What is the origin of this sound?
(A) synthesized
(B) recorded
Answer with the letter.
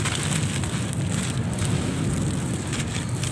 B